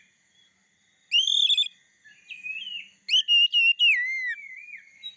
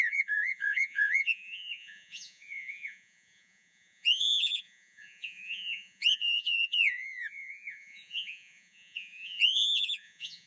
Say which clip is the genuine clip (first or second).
first